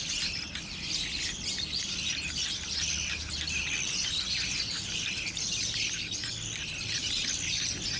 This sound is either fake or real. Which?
real